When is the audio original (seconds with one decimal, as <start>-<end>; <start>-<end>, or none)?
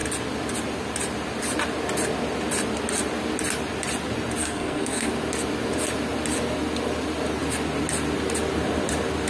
0.0-4.4; 5.1-9.3